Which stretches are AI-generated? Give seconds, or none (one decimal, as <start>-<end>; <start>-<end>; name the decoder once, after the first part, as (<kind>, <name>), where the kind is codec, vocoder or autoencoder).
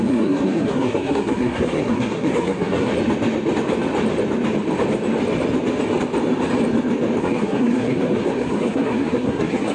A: 0.0-2.9 (codec, SNAC); 7.2-9.7